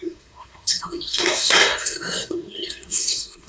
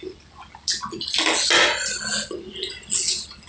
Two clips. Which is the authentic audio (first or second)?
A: second